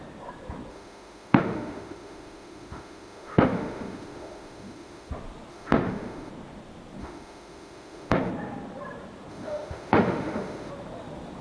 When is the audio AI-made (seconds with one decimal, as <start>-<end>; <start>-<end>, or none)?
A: 0.7-5.1; 5.5-6.3; 7.0-8.3; 9.3-10.7